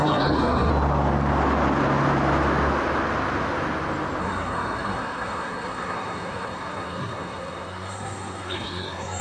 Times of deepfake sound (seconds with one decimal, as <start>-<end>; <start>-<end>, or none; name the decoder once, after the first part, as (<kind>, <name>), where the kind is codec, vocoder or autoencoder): 0.0-0.7 (codec, SNAC); 4.2-9.2